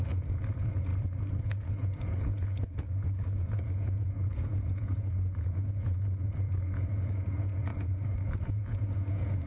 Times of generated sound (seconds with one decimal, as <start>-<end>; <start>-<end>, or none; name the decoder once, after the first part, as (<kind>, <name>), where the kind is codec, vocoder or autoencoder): 0.0-0.9 (vocoder, Vocos); 1.4-9.5